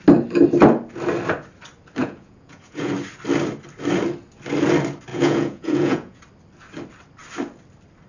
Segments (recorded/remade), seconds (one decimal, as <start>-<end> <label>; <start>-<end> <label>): 0.0-2.0 recorded; 2.0-2.9 remade; 2.9-5.1 recorded; 5.1-6.2 remade; 6.2-8.1 recorded